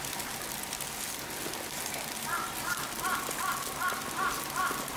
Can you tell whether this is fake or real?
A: real